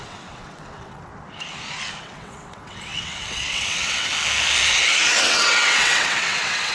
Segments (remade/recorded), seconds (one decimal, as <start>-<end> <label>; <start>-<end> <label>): 0.0-1.1 remade; 1.1-2.0 recorded; 2.0-4.1 remade; 4.1-5.2 recorded; 5.2-6.7 remade